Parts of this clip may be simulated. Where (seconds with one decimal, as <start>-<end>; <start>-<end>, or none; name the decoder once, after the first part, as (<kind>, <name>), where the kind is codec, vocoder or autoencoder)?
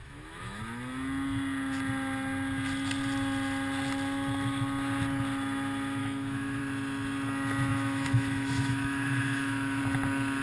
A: 0.0-0.6 (autoencoder, DAC-VAE); 6.0-6.6; 7.7-9.8